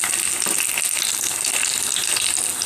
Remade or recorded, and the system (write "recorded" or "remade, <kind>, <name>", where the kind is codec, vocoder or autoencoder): recorded